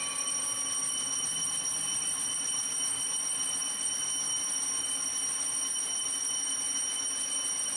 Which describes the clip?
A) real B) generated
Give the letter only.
A